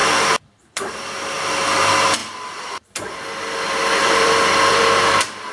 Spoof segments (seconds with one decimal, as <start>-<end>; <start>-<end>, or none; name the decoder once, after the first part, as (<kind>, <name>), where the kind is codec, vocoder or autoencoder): 0.0-1.8 (vocoder, BigVGAN v2); 2.2-4.8